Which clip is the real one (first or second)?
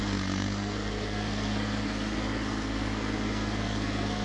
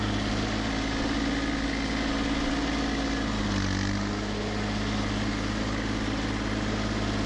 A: second